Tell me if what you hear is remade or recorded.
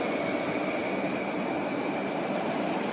recorded